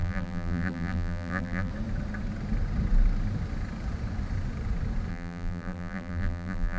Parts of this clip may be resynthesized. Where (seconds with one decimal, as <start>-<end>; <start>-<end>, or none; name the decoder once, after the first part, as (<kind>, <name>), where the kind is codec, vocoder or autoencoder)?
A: 0.0-1.7 (vocoder, BigVGAN v2); 5.1-6.8